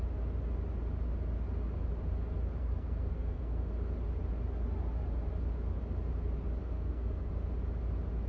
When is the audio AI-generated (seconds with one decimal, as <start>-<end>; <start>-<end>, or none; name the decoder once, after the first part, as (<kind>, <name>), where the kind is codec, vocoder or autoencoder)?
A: 2.6-3.7 (codec, SNAC); 6.6-7.3